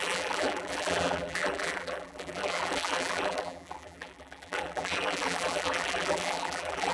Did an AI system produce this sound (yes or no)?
yes